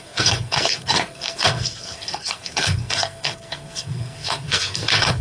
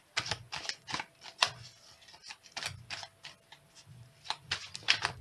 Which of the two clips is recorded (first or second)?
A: second